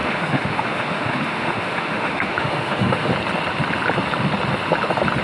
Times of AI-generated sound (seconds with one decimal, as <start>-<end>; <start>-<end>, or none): 0.0-3.1